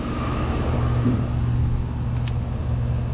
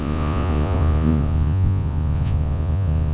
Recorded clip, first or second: first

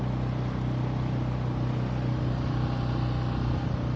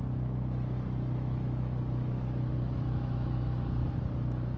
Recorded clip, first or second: first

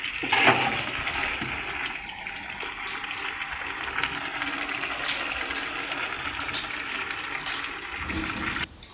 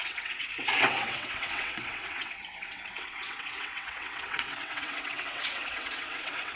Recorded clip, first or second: first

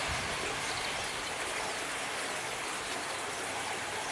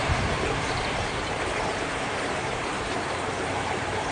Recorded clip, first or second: first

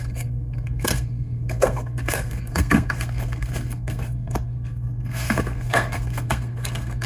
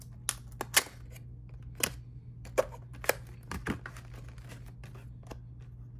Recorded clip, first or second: second